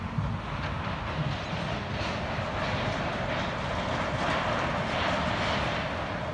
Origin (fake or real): real